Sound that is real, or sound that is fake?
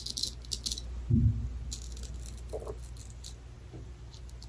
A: real